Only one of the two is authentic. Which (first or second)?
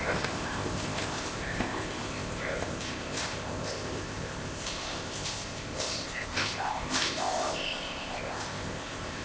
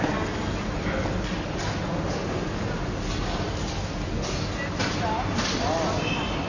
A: second